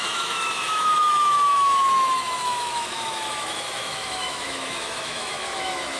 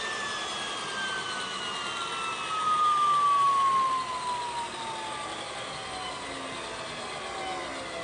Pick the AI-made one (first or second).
first